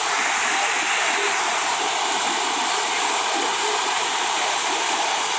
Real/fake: fake